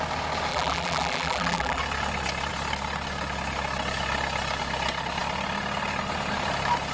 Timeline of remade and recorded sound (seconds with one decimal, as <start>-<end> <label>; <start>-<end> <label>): 0.0-0.5 recorded; 0.5-1.8 remade; 1.8-6.9 recorded